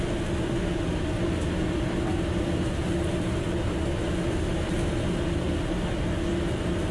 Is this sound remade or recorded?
recorded